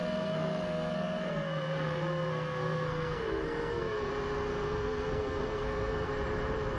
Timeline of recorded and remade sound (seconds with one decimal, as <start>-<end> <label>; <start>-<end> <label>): 0.0-4.1 remade; 4.1-4.5 recorded; 4.5-6.1 remade; 6.1-6.8 recorded